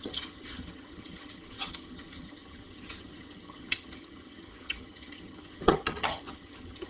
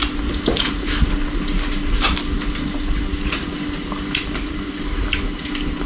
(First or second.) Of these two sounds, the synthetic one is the first